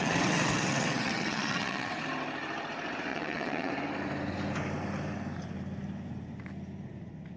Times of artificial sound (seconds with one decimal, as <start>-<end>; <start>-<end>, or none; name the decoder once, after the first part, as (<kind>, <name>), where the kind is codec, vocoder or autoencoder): 0.0-1.9 (vocoder, WaveNeXt); 3.1-3.7

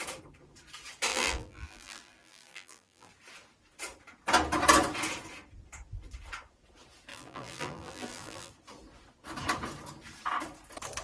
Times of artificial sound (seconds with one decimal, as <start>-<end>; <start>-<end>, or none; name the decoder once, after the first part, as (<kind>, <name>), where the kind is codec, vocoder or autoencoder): 1.1-3.1 (vocoder, BigVGAN v2); 7.1-8.5